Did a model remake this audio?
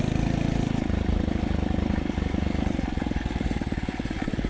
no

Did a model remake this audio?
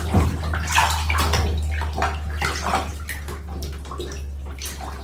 no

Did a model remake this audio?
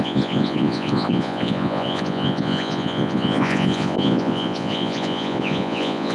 yes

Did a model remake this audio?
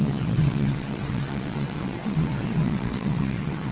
yes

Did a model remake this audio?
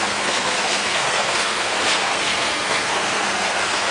yes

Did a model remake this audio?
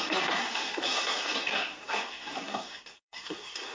yes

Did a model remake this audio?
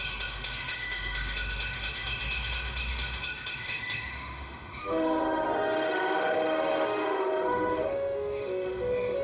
yes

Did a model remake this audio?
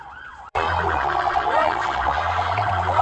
yes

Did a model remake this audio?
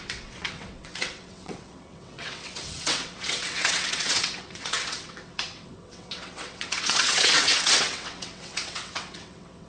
yes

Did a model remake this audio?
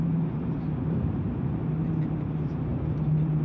yes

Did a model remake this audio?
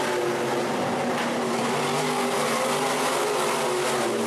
no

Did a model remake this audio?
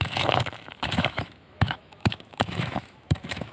yes